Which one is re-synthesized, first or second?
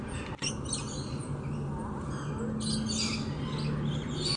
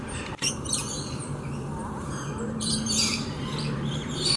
second